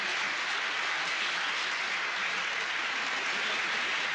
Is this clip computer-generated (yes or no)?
no